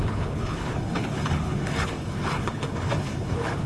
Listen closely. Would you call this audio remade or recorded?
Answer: remade